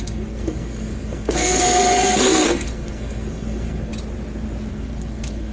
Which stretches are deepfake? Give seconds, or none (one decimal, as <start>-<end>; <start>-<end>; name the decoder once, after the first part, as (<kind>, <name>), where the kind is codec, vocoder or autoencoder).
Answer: 0.0-3.9 (codec, SNAC); 4.7-5.5